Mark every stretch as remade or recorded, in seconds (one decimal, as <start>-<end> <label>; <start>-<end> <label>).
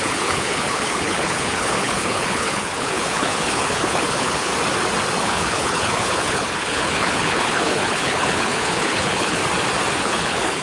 0.0-4.5 remade; 4.5-5.2 recorded; 5.2-9.4 remade; 9.4-10.0 recorded; 10.0-10.6 remade